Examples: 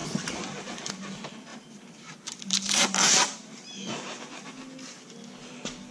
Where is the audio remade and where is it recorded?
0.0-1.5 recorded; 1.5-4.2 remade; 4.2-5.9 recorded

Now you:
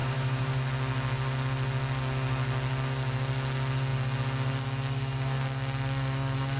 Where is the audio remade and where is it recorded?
0.0-0.6 remade; 0.6-6.6 recorded

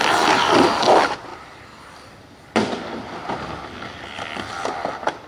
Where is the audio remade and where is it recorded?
0.0-1.3 recorded; 1.3-4.5 remade; 4.5-5.3 recorded

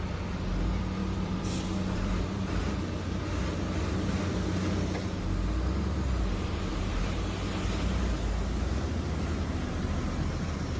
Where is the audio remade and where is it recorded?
0.0-1.0 recorded; 1.0-2.6 remade; 2.6-6.7 recorded; 6.7-7.4 remade; 7.4-10.8 recorded

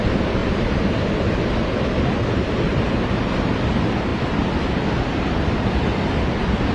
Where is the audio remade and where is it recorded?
0.0-0.4 recorded; 0.4-0.9 remade; 0.9-2.7 recorded; 2.7-3.5 remade; 3.5-6.7 recorded

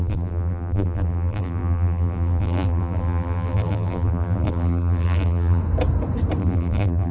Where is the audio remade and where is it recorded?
0.0-5.6 remade; 5.6-6.4 recorded; 6.4-7.1 remade

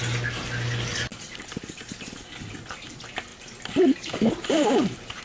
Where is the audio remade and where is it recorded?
0.0-1.1 recorded; 1.1-2.0 remade; 2.0-3.3 recorded; 3.3-5.2 remade

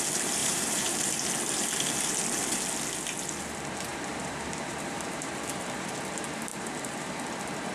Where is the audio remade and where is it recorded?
0.0-0.4 recorded; 0.4-1.3 remade; 1.3-3.9 recorded; 3.9-6.0 remade; 6.0-6.5 recorded; 6.5-7.1 remade; 7.1-7.7 recorded